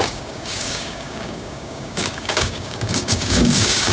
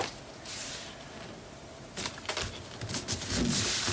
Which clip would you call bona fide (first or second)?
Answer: second